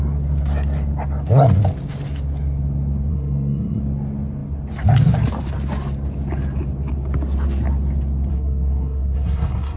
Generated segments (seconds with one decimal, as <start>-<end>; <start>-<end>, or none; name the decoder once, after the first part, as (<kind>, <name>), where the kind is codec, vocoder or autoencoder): 3.1-3.8 (codec, SNAC); 8.3-9.8